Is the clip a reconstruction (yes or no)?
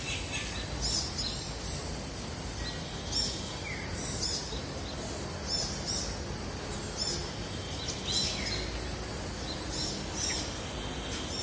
no